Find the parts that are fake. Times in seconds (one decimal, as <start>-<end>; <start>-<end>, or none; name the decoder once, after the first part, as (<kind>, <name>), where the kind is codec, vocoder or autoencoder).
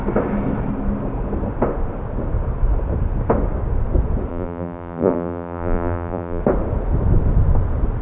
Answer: 4.3-6.4 (vocoder, BigVGAN v2)